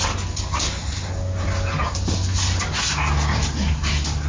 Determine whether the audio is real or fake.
real